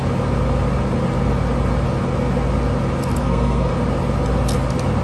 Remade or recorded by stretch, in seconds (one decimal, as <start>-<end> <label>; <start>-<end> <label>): 0.0-3.2 recorded; 3.2-3.7 remade; 3.7-5.0 recorded